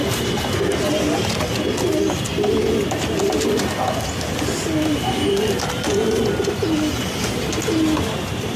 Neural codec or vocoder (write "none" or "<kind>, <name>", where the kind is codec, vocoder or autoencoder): none